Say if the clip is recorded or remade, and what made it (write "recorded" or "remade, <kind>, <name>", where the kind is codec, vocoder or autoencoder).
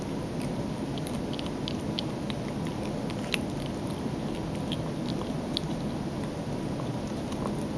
recorded